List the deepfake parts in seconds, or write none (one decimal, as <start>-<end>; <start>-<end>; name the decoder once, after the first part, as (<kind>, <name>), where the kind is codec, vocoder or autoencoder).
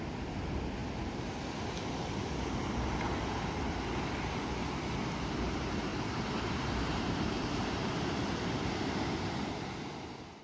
0.8-1.5 (vocoder, BigVGAN v2); 5.9-9.1